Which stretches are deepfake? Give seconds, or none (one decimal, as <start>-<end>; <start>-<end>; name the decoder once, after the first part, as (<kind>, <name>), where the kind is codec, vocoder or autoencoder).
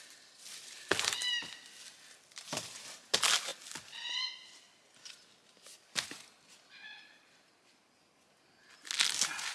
none